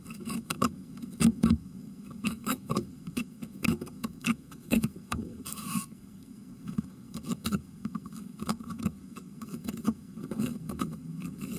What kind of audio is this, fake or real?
fake